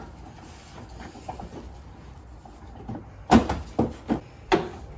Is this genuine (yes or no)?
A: yes